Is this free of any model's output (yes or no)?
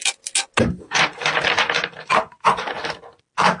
yes